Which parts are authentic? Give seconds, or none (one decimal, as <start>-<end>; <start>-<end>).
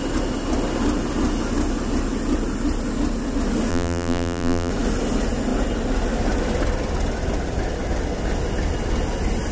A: 0.0-3.7; 4.7-9.5